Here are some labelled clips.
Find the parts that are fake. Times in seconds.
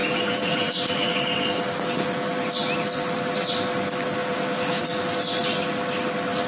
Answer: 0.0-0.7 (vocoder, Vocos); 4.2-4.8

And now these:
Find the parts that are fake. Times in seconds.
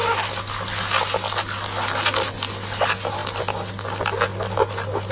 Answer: none